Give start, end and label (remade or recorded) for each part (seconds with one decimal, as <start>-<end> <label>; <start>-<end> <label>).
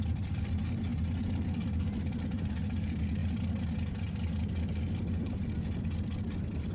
0.0-6.7 recorded